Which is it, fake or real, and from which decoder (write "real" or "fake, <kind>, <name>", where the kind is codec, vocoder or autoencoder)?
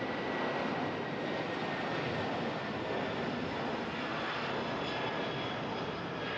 real